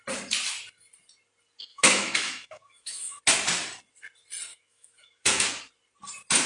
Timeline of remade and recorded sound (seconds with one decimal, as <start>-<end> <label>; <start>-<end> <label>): 0.0-1.7 recorded; 1.7-3.2 remade; 3.2-4.5 recorded; 4.5-5.5 remade; 5.5-6.5 recorded